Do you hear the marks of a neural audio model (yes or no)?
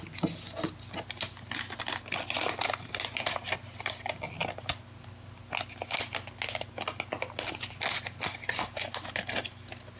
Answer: no